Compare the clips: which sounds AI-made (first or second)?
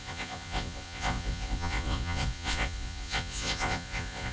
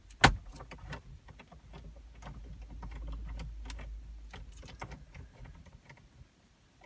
first